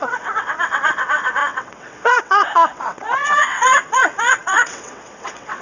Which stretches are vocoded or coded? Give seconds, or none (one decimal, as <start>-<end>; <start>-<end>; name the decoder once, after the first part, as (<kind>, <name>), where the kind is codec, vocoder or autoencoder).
0.0-5.6 (vocoder, WaveNeXt)